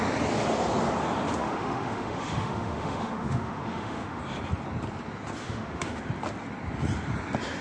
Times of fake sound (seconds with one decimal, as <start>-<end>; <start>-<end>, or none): 1.4-4.2; 5.4-6.0